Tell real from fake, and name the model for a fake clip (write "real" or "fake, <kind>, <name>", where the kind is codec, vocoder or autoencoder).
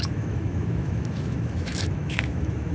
fake, autoencoder, DAC-VAE